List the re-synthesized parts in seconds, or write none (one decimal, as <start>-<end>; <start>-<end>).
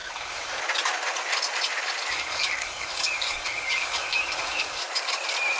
0.0-0.6; 2.1-4.8